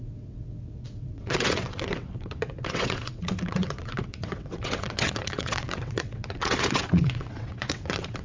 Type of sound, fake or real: fake